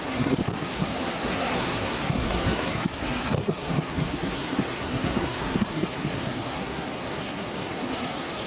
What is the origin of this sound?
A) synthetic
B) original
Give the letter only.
A